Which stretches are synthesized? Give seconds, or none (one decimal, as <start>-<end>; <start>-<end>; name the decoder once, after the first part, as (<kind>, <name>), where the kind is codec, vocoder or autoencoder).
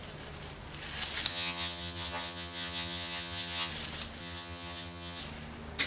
1.3-3.7 (vocoder, HiFi-GAN); 4.2-5.2